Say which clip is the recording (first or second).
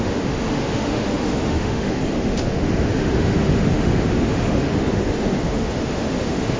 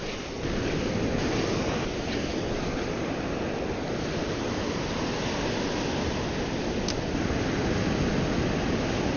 second